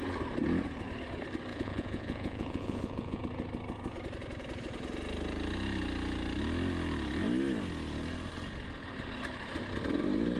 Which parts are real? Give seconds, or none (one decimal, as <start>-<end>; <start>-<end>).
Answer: 0.0-1.5; 3.2-10.4